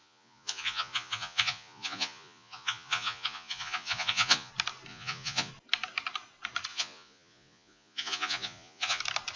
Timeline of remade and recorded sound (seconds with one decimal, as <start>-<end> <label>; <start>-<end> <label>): 0.0-4.5 remade; 4.5-4.9 recorded; 4.9-5.5 remade; 5.5-6.7 recorded; 6.7-9.0 remade; 9.0-9.4 recorded